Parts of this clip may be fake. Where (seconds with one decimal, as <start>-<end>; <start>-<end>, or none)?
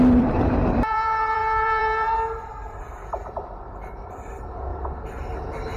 0.0-4.7